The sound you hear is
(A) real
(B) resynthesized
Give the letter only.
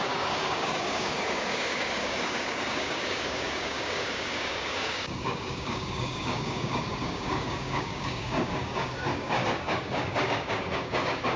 B